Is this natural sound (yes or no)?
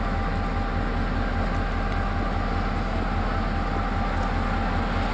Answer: yes